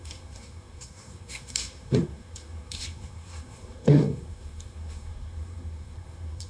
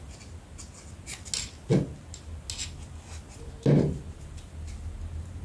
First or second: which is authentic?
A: second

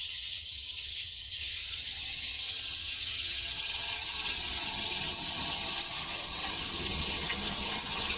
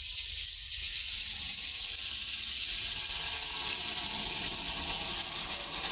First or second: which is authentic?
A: second